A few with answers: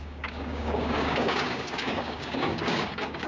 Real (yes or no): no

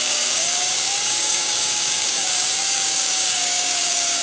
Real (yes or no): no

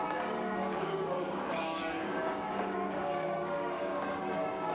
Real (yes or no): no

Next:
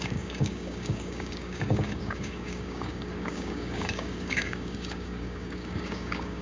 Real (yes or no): no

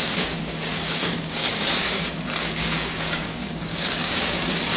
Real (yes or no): no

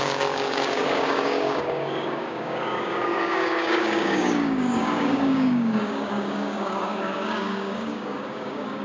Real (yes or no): no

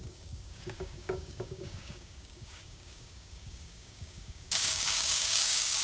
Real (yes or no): no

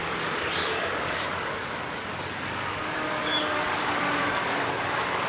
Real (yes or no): no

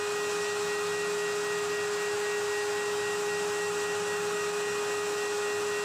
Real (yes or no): yes